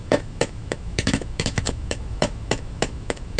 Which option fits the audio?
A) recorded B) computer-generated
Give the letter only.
B